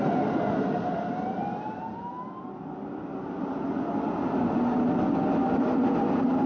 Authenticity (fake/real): real